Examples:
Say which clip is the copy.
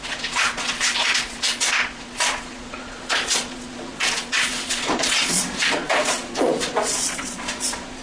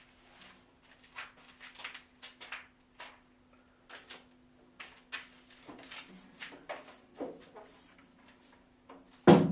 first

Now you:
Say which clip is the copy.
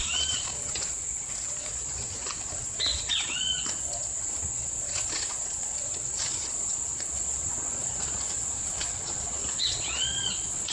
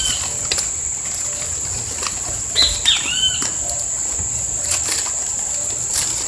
first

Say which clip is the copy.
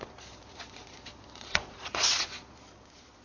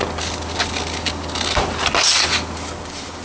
first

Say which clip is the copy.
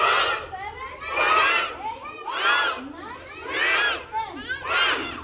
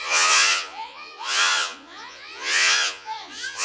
second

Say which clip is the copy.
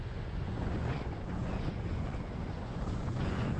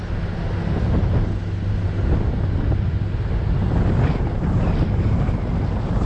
first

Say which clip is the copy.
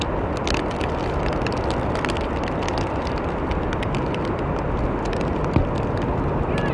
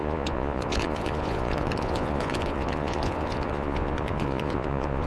second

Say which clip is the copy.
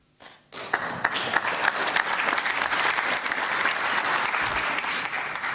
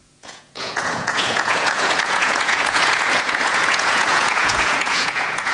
second